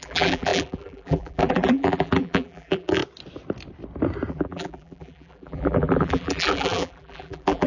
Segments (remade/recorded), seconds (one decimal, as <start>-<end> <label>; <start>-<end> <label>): 0.0-3.0 remade; 3.0-4.3 recorded; 4.3-7.7 remade